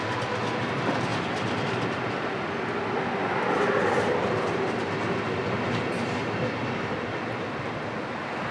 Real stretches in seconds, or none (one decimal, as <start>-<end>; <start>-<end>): 0.0-8.5